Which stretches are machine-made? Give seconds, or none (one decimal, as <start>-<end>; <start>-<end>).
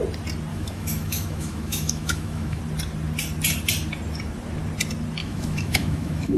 0.5-2.6; 5.2-6.4